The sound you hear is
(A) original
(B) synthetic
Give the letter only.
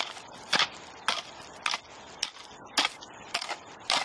A